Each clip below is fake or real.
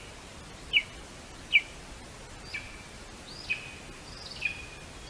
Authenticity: real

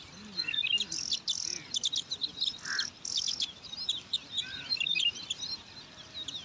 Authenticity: real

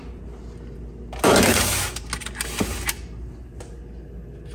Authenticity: real